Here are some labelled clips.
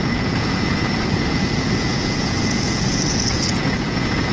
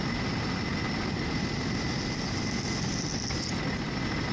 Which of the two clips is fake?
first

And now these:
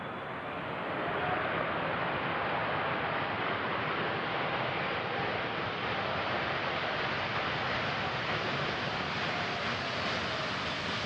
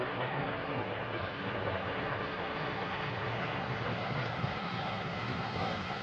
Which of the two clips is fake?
second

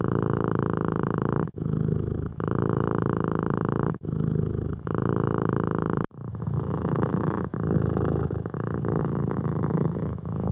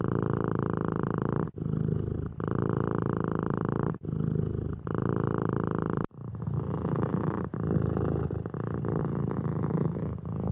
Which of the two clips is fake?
first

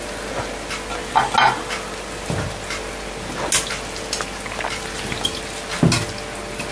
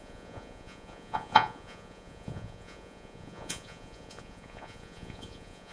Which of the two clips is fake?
second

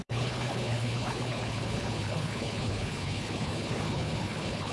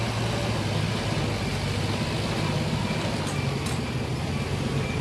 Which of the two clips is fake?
first